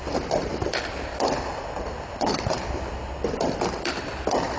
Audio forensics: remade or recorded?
recorded